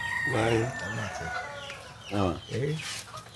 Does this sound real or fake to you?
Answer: real